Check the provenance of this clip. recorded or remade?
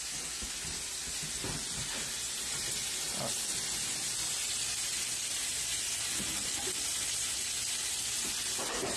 recorded